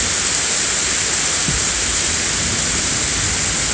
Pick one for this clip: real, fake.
real